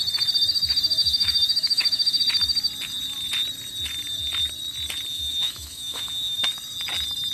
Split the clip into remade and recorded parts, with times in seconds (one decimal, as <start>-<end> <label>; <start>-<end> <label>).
0.0-1.0 recorded; 1.0-2.2 remade; 2.2-5.1 recorded; 5.1-6.4 remade; 6.4-7.3 recorded